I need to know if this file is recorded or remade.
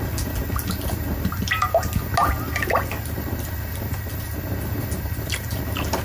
recorded